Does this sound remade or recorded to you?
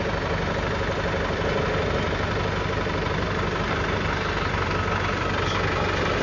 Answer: recorded